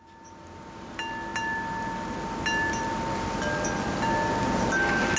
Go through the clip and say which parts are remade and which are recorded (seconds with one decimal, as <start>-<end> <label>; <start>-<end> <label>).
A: 0.0-5.2 recorded